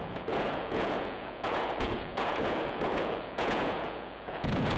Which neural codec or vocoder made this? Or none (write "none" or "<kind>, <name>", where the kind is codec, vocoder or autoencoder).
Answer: vocoder, Vocos